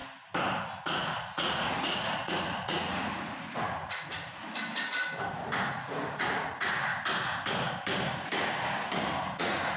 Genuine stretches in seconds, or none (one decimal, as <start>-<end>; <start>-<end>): 0.0-0.8; 4.4-5.6; 6.9-9.4